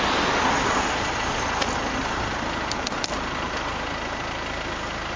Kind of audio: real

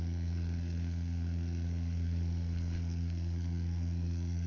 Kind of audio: fake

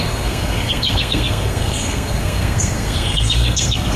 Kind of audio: fake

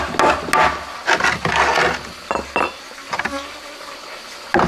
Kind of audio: real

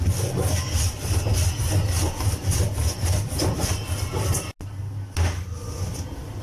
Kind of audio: real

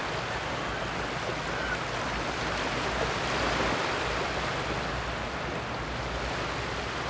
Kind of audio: real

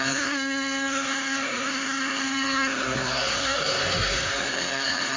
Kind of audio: fake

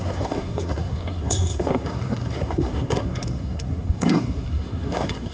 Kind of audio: fake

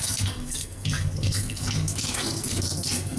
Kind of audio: fake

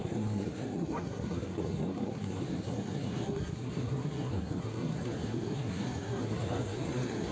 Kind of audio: fake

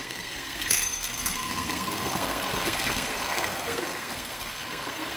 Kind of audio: fake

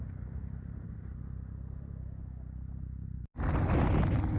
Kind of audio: real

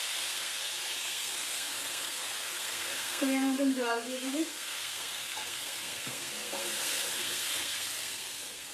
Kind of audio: fake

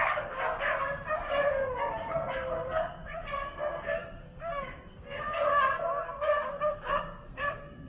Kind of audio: fake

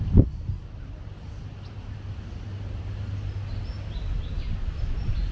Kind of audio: real